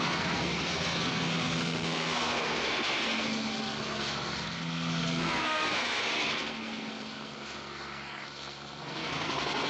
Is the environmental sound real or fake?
fake